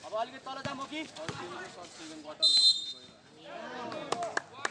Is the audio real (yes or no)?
yes